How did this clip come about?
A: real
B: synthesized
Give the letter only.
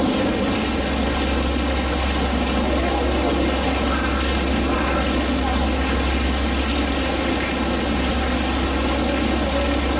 A